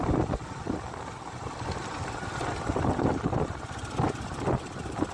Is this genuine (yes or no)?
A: yes